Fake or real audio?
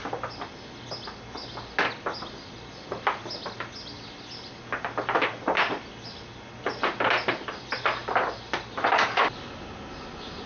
real